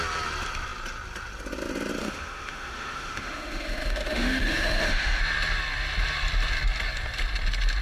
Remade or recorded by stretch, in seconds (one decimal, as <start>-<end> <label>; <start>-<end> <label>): 0.0-2.0 recorded; 2.0-5.2 remade; 5.2-7.8 recorded